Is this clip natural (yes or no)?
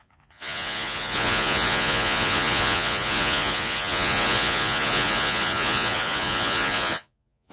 no